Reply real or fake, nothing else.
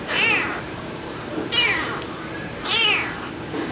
fake